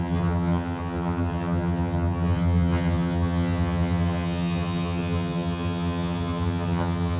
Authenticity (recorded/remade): remade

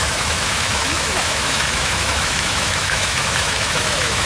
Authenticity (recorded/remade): remade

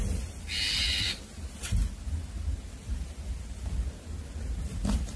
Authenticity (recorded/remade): recorded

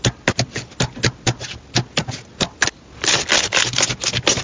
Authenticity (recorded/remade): recorded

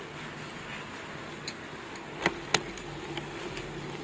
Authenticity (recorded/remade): recorded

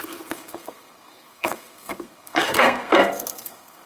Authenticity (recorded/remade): remade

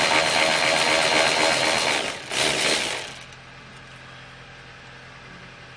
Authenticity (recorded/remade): recorded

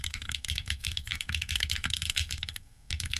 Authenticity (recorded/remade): remade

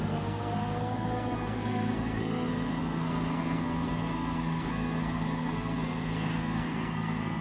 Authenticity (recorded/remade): remade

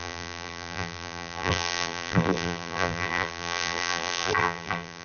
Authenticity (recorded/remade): remade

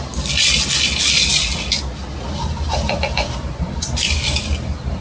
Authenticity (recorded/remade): recorded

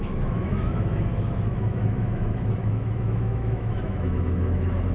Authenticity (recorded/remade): remade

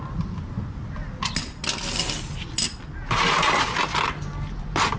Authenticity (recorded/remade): recorded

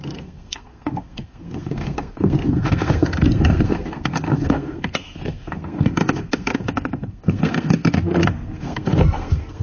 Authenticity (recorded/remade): remade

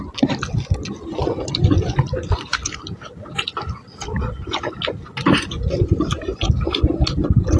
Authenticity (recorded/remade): recorded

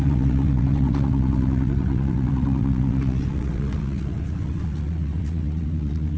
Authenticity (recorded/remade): remade